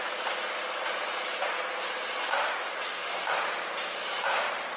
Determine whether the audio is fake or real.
real